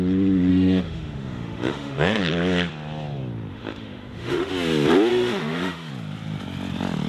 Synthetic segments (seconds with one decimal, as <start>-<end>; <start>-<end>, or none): 0.5-2.2; 3.5-4.5; 5.1-5.9